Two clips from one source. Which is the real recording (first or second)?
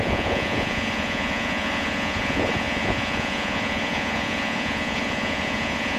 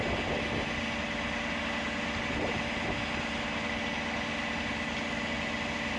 second